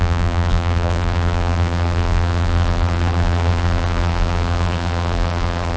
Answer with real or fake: fake